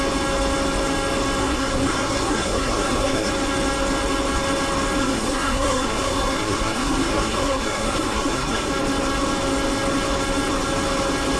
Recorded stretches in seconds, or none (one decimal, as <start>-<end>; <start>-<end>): 0.0-1.4; 3.3-5.0; 8.7-11.4